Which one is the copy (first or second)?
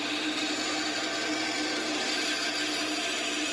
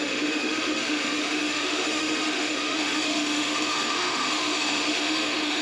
second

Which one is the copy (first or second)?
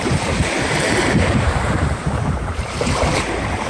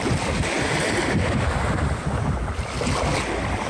first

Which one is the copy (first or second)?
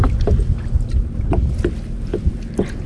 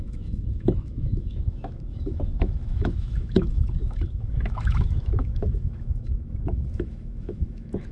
second